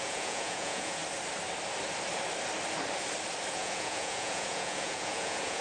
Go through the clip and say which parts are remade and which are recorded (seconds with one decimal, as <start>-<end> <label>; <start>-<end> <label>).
0.0-1.0 remade; 1.0-3.5 recorded; 3.5-5.6 remade